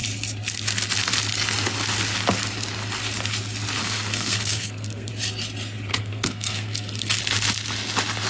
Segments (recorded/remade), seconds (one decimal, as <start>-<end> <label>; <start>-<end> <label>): 0.0-3.8 recorded; 3.8-5.1 remade; 5.1-5.9 recorded; 5.9-7.2 remade; 7.2-8.3 recorded